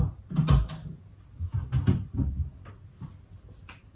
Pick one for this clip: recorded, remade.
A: recorded